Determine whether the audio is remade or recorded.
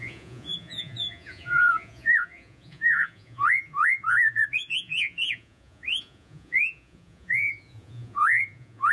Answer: remade